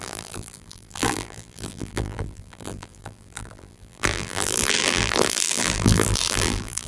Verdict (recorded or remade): remade